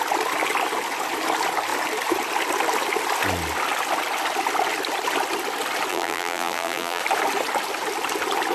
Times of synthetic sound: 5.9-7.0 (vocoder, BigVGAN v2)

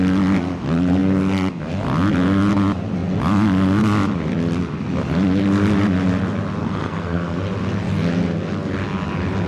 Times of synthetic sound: 6.6-7.4 (codec, SNAC)

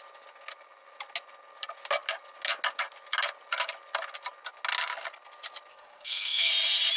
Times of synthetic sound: 5.7-6.5 (codec, SNAC)

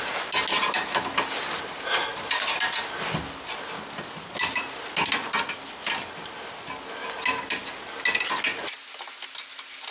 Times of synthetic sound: none

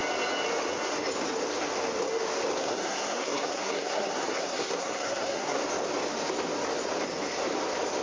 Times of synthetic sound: 2.6-5.6 (codec, SNAC)